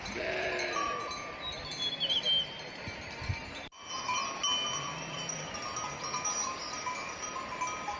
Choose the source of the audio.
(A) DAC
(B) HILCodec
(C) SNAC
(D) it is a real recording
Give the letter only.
D